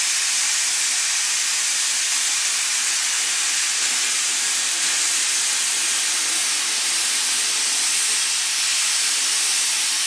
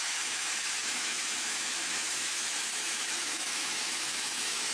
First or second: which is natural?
first